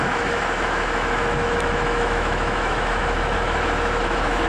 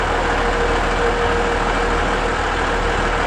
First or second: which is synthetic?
first